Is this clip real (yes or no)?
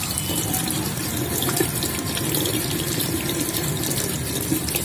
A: no